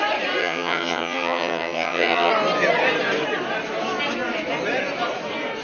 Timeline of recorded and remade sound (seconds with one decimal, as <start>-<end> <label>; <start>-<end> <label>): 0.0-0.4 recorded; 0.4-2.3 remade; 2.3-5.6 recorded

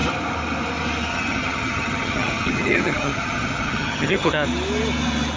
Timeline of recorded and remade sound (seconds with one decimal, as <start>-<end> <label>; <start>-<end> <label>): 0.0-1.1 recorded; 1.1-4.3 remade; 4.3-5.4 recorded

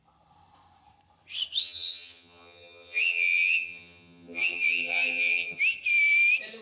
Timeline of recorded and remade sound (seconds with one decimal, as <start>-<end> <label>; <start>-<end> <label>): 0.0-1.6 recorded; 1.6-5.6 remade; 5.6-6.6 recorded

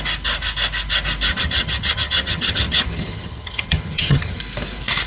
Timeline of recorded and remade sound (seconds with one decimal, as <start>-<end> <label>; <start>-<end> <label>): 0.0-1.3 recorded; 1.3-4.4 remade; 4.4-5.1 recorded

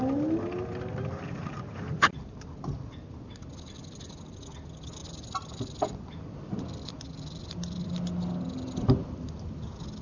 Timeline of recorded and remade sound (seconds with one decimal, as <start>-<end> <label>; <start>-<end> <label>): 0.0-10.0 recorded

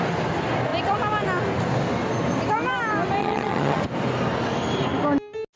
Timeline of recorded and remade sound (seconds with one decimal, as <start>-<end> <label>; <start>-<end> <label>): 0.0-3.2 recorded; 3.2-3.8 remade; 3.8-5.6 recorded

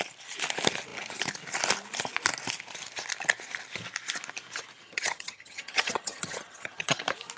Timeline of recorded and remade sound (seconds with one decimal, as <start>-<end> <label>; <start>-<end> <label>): 0.0-4.8 recorded; 4.8-7.0 remade; 7.0-7.4 recorded

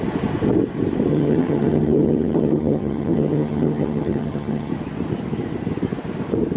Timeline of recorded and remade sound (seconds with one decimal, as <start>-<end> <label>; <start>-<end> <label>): 0.0-1.1 recorded; 1.1-4.7 remade; 4.7-6.6 recorded